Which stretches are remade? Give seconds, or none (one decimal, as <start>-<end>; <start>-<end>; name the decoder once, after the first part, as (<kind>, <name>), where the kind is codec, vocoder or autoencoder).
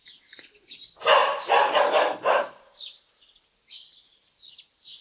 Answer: none